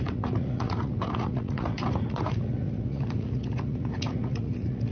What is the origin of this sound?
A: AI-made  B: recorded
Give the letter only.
A